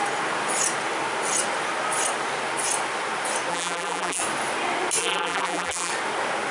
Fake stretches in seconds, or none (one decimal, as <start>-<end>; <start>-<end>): 3.5-4.2; 5.0-5.9